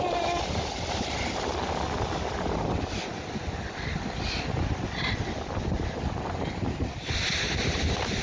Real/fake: real